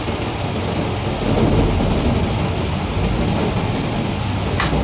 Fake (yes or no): no